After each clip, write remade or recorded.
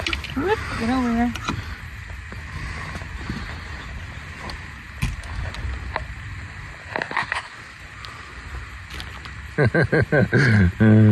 recorded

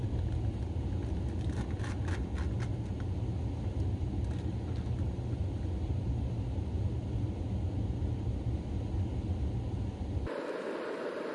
recorded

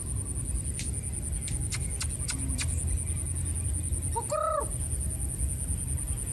recorded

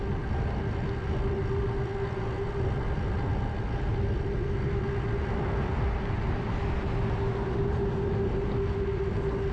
recorded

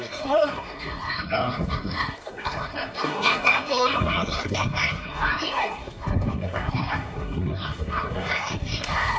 remade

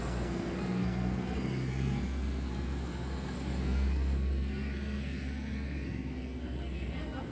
remade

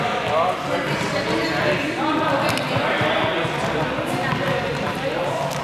recorded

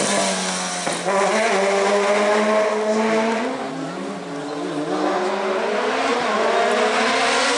recorded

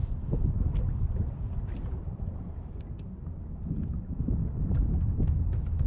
recorded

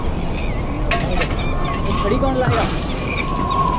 recorded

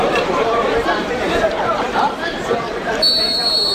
remade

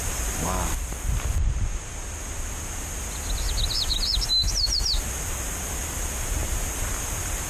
recorded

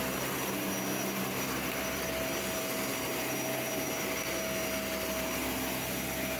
recorded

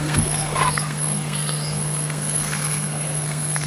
remade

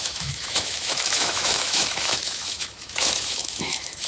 remade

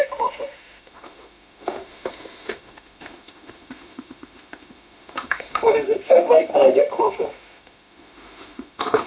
remade